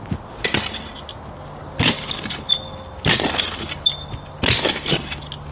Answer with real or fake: real